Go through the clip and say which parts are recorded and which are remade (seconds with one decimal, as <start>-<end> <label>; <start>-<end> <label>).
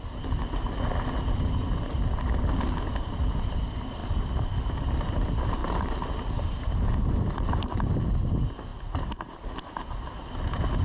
0.0-10.8 recorded